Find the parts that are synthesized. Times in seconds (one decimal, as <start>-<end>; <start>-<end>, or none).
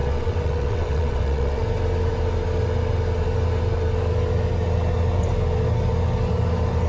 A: 0.0-1.6